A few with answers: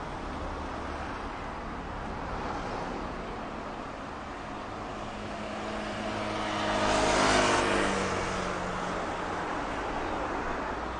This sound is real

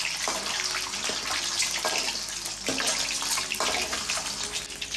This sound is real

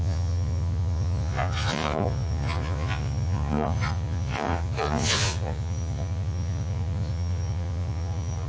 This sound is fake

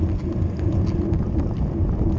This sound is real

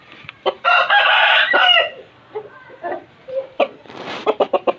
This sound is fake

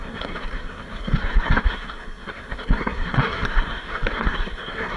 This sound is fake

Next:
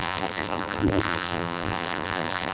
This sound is fake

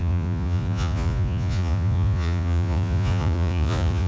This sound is fake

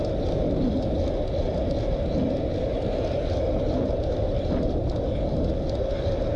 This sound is real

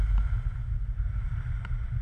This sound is real